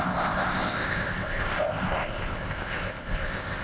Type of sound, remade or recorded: remade